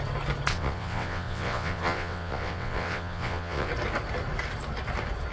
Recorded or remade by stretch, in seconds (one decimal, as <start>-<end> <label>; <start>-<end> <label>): 0.0-0.5 recorded; 0.5-3.7 remade; 3.7-5.3 recorded